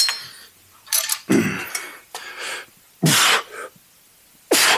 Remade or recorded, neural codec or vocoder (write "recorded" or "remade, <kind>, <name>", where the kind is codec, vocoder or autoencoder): recorded